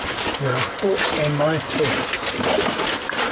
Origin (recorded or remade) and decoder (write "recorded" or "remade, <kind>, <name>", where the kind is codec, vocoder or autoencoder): recorded